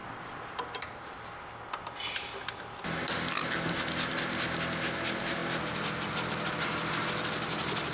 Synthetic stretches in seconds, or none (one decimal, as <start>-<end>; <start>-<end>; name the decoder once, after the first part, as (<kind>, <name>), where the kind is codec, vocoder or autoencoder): none